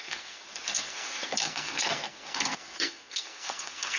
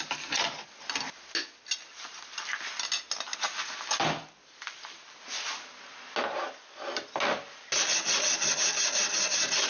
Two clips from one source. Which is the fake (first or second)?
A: first